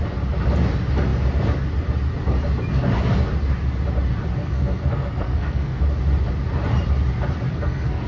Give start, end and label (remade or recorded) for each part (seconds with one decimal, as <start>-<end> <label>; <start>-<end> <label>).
0.0-4.4 recorded; 4.4-5.8 remade; 5.8-7.5 recorded; 7.5-8.1 remade